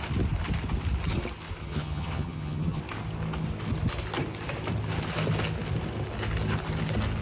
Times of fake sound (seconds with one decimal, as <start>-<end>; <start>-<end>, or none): 1.6-2.8